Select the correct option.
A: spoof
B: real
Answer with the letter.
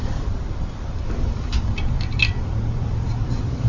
A